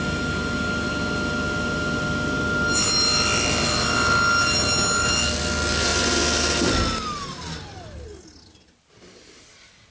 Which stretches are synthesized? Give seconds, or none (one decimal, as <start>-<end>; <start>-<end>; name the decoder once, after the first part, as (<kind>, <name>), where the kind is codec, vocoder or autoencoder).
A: none